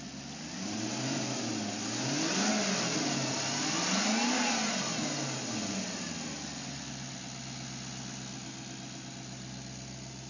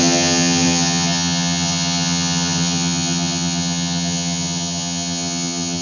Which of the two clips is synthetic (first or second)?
second